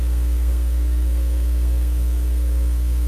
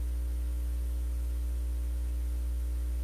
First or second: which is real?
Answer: second